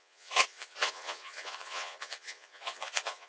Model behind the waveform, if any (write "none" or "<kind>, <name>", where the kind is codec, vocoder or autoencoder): vocoder, Vocos